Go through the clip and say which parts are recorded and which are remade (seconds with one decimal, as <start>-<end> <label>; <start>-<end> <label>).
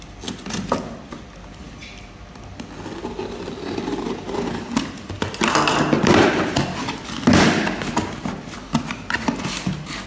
0.0-10.1 recorded